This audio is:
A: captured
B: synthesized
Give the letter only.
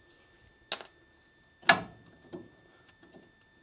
A